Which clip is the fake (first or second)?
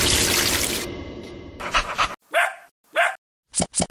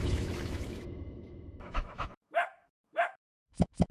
second